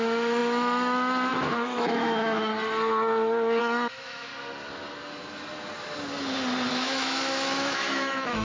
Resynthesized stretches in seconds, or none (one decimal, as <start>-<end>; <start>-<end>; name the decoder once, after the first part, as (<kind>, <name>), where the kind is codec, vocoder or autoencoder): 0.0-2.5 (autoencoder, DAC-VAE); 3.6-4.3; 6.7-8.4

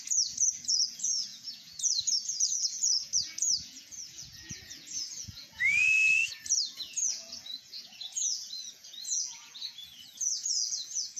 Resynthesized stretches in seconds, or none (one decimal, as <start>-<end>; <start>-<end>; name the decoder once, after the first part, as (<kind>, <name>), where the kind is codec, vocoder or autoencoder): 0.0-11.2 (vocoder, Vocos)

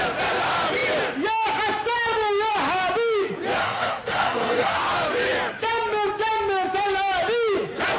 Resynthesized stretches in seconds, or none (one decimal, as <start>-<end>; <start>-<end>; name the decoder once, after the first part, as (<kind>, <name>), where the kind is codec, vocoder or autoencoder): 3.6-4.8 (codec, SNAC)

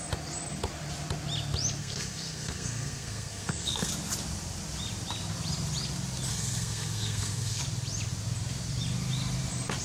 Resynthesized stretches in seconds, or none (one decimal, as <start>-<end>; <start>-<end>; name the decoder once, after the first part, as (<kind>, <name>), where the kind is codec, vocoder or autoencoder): 1.8-3.9 (codec, SNAC); 6.3-7.6

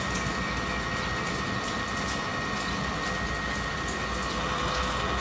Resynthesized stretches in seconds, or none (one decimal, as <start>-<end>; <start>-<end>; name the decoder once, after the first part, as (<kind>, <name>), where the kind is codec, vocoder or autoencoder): none

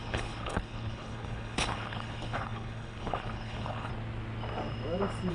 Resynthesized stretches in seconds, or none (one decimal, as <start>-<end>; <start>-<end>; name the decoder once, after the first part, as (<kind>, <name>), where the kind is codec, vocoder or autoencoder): 0.0-3.9 (codec, HILCodec)

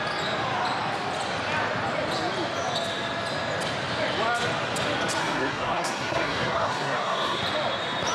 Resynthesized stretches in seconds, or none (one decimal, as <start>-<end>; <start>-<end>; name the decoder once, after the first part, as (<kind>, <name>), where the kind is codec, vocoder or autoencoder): 5.2-7.4 (codec, SNAC)